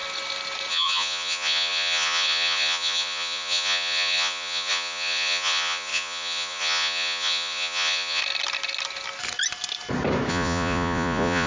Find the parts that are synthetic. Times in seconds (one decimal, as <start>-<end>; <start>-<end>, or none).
0.7-8.2; 10.3-11.5